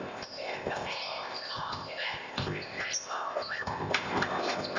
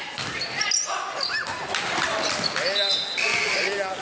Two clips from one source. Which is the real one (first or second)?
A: second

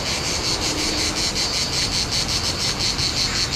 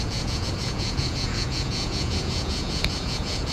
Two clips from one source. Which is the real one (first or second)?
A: first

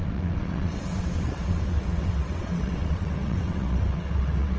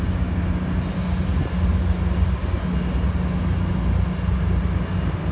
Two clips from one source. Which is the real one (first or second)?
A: second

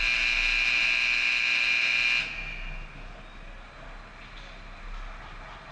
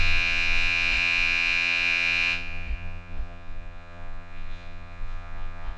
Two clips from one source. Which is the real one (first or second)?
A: first